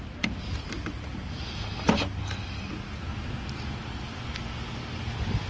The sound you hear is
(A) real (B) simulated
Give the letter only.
A